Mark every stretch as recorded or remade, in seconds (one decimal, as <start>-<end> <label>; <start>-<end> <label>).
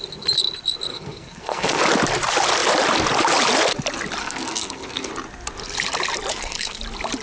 0.0-0.9 recorded; 0.9-1.8 remade; 1.8-4.2 recorded; 4.2-5.1 remade; 5.1-6.3 recorded; 6.3-6.8 remade; 6.8-7.2 recorded